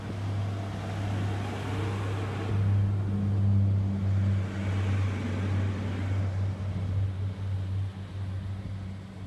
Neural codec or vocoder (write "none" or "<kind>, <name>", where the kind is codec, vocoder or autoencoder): none